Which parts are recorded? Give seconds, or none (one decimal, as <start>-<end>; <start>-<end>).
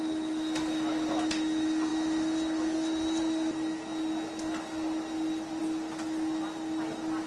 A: 0.0-7.3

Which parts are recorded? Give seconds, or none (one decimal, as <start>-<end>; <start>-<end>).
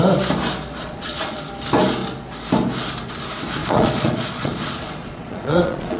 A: 0.0-0.8; 1.4-3.6